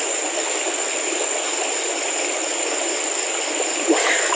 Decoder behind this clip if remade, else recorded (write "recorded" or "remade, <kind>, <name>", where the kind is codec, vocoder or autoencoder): recorded